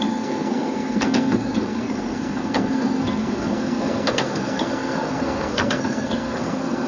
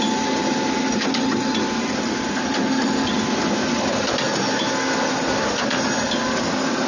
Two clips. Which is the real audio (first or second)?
second